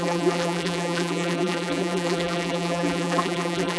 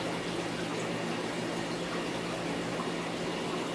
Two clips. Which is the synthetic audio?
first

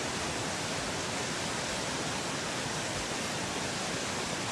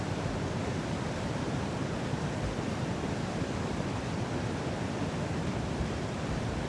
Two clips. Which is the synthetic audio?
second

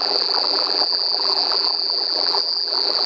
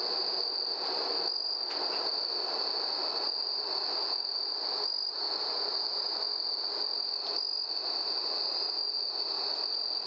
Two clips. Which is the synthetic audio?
first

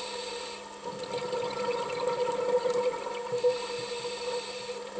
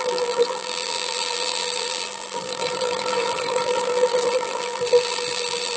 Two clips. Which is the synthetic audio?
second